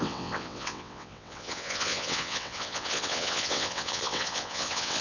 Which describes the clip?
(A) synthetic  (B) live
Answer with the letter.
A